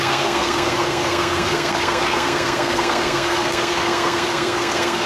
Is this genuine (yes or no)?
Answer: no